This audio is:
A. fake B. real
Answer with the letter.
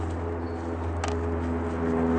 B